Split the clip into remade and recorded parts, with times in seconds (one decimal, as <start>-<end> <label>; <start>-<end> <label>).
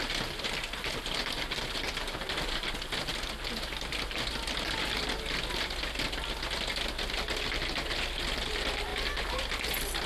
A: 0.0-1.6 remade; 1.6-8.9 recorded; 8.9-9.7 remade; 9.7-10.1 recorded